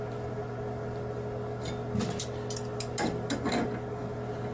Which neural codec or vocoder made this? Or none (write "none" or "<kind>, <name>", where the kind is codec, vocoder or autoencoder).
none